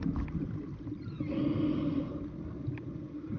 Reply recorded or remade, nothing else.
recorded